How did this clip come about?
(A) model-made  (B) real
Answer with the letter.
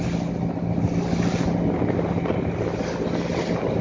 B